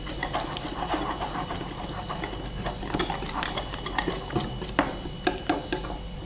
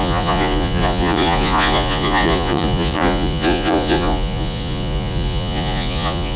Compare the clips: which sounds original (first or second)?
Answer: first